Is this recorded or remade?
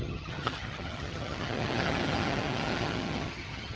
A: remade